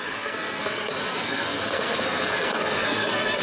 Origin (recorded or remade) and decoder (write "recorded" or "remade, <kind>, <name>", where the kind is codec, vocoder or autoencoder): remade, codec, SNAC